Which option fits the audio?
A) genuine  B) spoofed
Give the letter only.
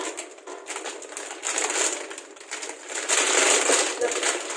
A